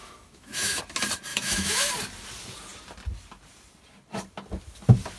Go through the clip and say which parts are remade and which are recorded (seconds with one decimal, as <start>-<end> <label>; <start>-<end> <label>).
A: 0.0-0.8 remade; 0.8-1.3 recorded; 1.3-1.9 remade; 1.9-5.2 recorded